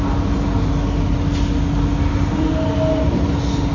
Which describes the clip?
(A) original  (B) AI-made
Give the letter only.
A